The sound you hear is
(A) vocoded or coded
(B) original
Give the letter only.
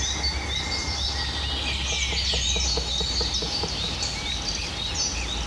B